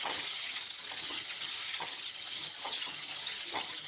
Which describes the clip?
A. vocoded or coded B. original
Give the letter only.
A